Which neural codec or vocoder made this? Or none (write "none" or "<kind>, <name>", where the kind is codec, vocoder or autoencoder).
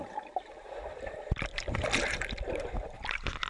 vocoder, BigVGAN v2